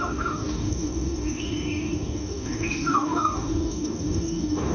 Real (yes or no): no